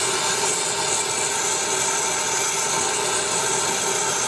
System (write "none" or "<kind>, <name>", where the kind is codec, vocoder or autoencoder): none